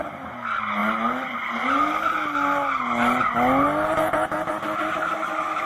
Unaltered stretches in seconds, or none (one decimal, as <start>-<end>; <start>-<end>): 0.0-5.7